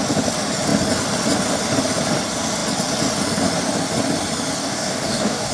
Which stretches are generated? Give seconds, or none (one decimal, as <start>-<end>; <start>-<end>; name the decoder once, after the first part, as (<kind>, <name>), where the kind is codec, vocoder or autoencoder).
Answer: 4.6-5.5 (codec, DAC)